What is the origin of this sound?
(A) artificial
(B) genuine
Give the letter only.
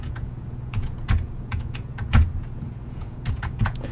A